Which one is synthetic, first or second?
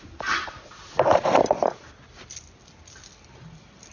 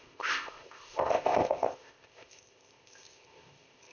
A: second